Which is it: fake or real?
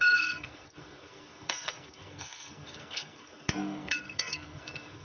fake